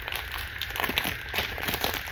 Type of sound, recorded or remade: remade